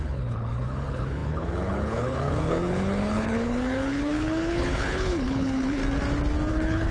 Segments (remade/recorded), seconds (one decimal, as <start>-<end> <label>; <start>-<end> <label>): 0.0-5.8 remade; 5.8-6.5 recorded; 6.5-6.9 remade